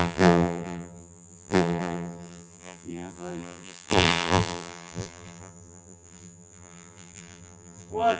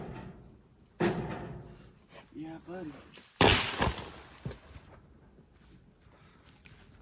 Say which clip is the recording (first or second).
second